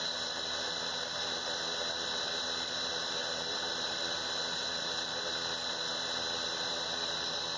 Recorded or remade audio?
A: remade